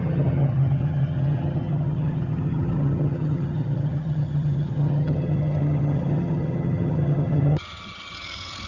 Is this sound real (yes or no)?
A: no